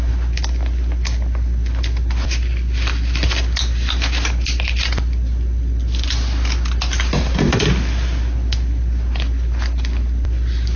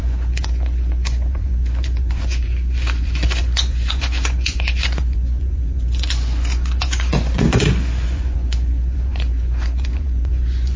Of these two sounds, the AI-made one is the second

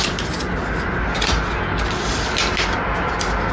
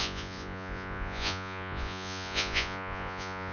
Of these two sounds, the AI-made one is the second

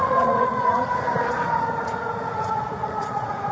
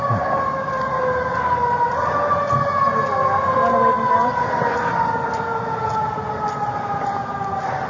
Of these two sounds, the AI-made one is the first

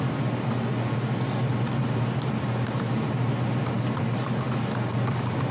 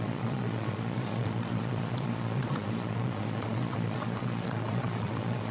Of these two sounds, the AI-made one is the second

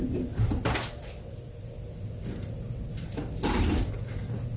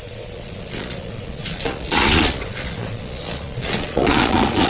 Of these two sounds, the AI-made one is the second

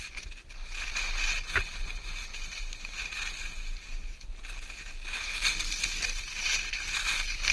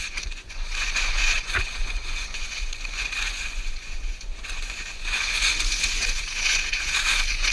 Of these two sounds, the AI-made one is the second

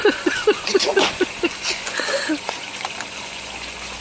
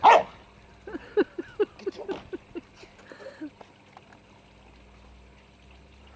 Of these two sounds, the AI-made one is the first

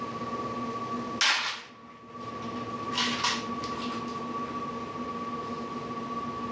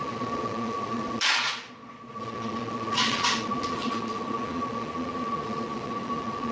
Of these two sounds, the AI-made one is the second